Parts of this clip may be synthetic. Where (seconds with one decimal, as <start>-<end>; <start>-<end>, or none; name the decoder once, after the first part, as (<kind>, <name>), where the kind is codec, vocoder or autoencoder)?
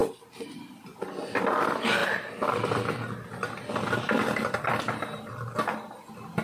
none